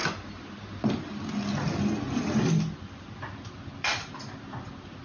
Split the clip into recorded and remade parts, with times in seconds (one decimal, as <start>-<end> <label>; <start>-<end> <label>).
0.0-5.0 recorded